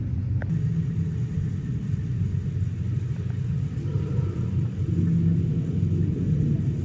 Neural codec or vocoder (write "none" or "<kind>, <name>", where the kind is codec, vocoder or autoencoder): none